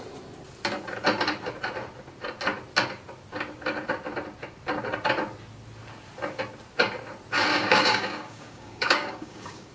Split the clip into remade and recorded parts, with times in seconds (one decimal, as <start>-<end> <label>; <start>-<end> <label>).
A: 0.0-7.5 recorded; 7.5-9.7 remade